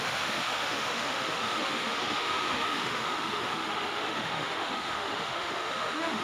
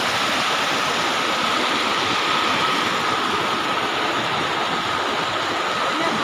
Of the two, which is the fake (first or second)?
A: first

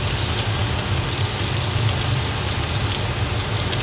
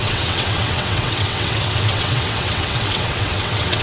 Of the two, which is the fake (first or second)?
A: second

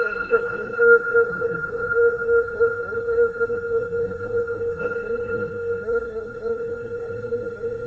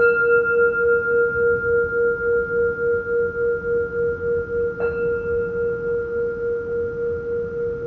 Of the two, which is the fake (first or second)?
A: first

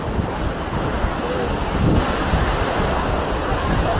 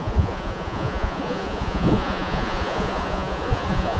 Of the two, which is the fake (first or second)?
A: second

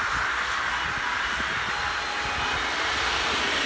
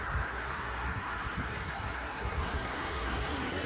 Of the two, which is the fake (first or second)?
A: second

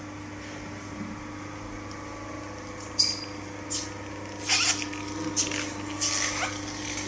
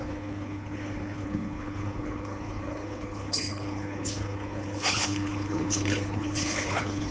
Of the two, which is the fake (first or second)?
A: second